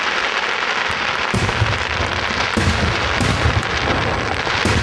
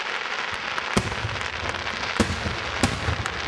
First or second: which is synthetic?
first